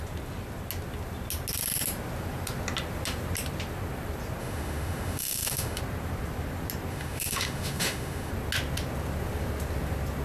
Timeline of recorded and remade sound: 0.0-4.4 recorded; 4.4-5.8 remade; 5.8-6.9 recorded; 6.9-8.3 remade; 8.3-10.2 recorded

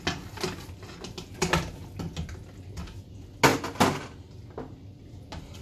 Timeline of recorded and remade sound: 0.0-5.6 recorded

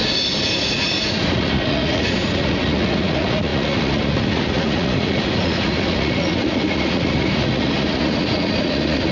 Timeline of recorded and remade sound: 0.0-0.6 recorded; 0.6-9.1 remade

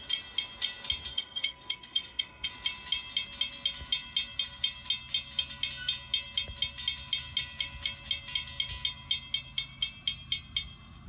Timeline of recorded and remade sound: 0.0-1.1 recorded; 1.1-2.5 remade; 2.5-11.1 recorded

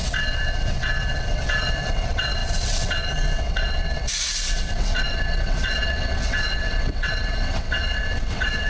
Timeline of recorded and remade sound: 0.0-8.7 remade

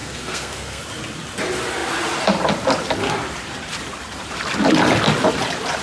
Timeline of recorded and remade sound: 0.0-0.8 remade; 0.8-5.8 recorded

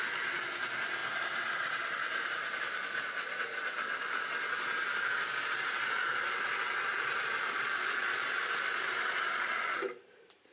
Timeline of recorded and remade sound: 0.0-1.0 recorded; 1.0-4.9 remade; 4.9-6.9 recorded; 6.9-9.4 remade; 9.4-10.5 recorded

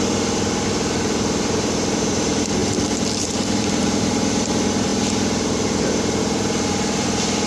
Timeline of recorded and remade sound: 0.0-4.9 remade; 4.9-6.2 recorded; 6.2-7.5 remade